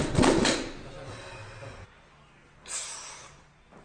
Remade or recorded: recorded